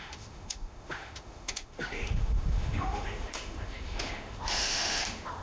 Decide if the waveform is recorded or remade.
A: remade